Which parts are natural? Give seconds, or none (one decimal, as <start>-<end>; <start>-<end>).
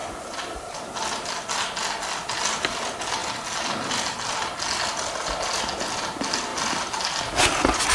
1.3-6.5